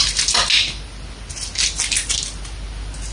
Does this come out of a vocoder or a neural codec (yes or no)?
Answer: no